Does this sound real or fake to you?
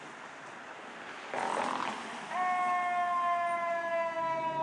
real